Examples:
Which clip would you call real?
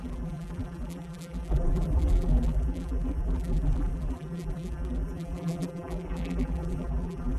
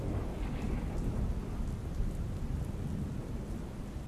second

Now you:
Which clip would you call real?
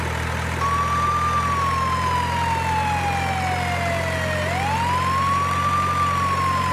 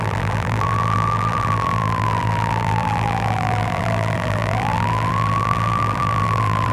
first